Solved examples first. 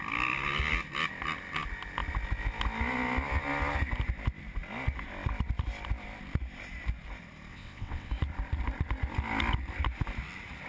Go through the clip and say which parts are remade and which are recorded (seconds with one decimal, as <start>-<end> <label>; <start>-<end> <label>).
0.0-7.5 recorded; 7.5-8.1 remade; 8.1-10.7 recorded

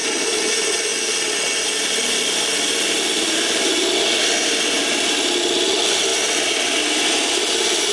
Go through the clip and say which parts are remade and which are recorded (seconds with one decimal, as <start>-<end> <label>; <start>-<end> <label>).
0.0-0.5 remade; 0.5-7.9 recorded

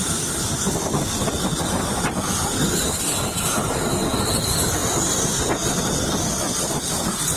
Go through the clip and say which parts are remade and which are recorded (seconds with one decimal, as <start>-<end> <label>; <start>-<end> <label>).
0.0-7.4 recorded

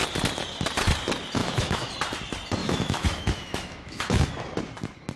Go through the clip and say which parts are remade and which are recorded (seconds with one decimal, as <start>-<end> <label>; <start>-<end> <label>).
0.0-1.4 recorded; 1.4-1.9 remade; 1.9-2.6 recorded; 2.6-4.2 remade; 4.2-5.2 recorded